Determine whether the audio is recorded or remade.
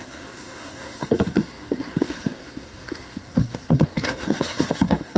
remade